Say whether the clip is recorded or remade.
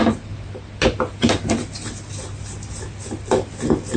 recorded